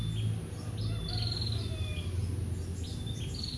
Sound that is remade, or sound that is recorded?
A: recorded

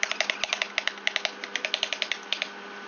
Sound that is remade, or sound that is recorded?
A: recorded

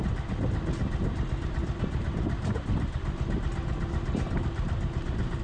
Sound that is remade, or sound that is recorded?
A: recorded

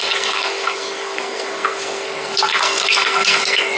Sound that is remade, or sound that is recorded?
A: remade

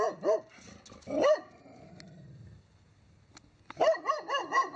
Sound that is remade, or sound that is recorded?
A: recorded